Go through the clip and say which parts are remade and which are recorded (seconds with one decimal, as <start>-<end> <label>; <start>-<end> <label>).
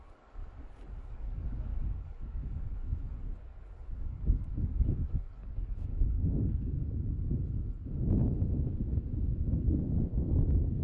0.0-0.4 remade; 0.4-1.0 recorded; 1.0-6.8 remade; 6.8-9.6 recorded; 9.6-10.8 remade